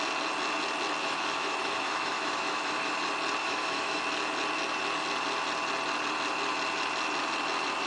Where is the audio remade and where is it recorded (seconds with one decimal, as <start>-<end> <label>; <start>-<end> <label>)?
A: 0.0-1.0 recorded; 1.0-2.9 remade; 2.9-3.4 recorded; 3.4-4.0 remade; 4.0-7.9 recorded